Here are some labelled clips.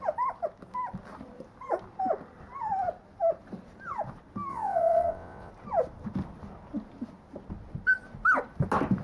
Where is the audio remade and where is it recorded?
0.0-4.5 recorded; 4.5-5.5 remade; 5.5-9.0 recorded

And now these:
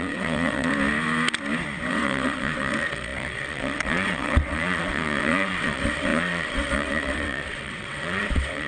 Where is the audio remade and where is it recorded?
0.0-0.7 remade; 0.7-1.9 recorded; 1.9-8.7 remade

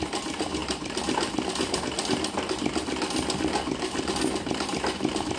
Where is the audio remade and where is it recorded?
0.0-5.4 recorded

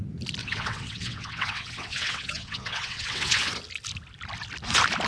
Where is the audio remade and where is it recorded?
0.0-0.4 recorded; 0.4-3.5 remade; 3.5-5.1 recorded

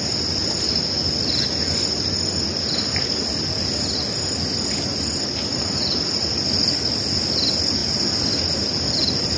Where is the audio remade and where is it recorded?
0.0-9.4 recorded

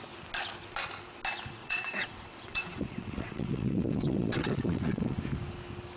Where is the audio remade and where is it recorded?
0.0-1.6 recorded; 1.6-5.2 remade; 5.2-6.0 recorded

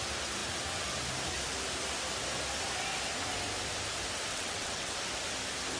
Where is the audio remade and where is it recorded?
0.0-4.3 recorded; 4.3-5.0 remade; 5.0-5.8 recorded